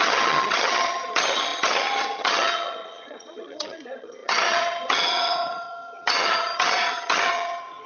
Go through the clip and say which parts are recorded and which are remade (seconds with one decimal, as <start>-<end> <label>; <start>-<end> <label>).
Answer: 0.0-7.9 remade